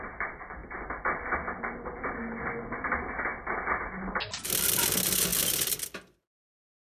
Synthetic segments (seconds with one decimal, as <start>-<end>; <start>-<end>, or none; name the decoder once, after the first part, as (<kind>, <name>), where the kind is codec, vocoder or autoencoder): none